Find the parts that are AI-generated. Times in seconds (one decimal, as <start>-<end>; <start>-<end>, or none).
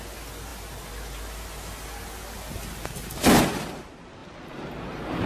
none